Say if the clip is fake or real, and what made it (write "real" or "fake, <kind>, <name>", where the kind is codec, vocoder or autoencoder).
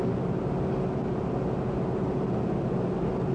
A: real